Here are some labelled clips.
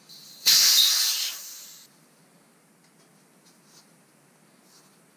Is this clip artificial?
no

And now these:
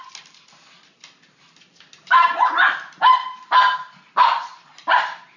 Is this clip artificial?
no